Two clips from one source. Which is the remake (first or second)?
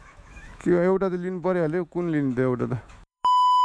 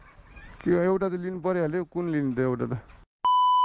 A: first